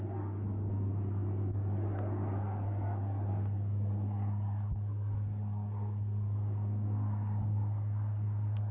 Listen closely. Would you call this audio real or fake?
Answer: fake